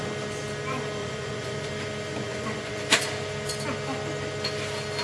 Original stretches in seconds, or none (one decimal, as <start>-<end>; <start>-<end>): 0.0-1.0; 1.7-2.1; 2.8-5.0